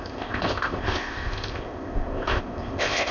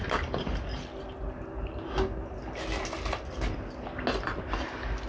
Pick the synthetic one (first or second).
first